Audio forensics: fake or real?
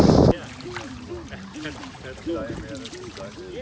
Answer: real